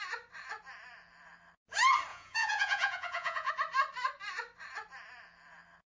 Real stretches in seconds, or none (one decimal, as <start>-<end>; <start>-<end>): 0.0-2.1; 3.5-5.9